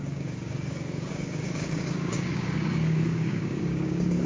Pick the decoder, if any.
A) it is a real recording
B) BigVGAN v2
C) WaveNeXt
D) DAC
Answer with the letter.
D